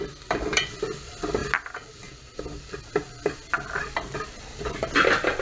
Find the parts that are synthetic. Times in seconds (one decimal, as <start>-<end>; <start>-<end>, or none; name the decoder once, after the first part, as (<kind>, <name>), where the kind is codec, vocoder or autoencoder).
none

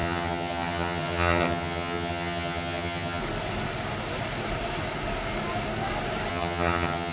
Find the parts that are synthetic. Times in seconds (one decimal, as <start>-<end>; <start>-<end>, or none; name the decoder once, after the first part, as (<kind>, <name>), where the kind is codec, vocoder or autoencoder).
0.0-3.2 (vocoder, HiFi-GAN); 6.3-7.1

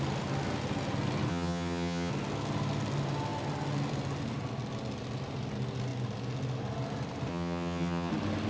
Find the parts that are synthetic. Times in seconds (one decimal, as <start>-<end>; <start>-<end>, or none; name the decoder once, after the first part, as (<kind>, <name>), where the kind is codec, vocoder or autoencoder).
1.3-2.1 (vocoder, HiFi-GAN); 7.3-8.1

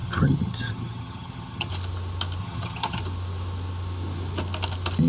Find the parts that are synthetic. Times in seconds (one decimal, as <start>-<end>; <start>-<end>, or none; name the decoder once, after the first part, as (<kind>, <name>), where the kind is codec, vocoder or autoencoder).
0.0-1.7 (vocoder, HiFi-GAN); 2.4-3.0